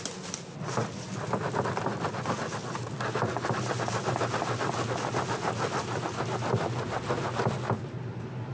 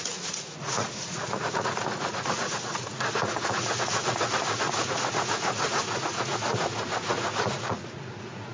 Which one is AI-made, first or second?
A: second